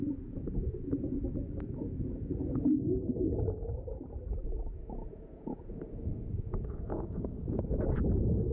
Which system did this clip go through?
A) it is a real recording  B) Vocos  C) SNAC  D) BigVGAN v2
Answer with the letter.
B